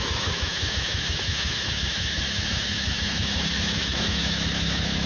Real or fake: fake